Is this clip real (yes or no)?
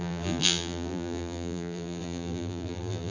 no